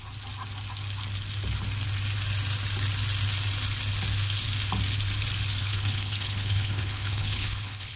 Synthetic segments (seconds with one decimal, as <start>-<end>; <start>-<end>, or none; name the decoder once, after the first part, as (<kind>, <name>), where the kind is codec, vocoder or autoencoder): 5.6-8.0 (codec, HILCodec)

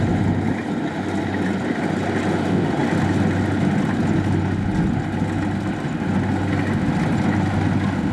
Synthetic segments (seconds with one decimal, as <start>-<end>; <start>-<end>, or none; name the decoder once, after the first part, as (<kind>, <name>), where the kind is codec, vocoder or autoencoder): none

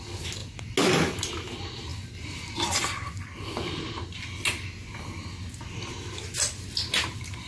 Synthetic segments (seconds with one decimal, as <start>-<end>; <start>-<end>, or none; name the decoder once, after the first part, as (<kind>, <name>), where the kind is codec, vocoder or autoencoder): none